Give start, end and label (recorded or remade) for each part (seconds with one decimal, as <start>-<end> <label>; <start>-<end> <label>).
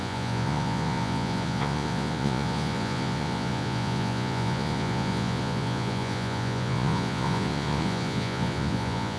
0.0-9.2 remade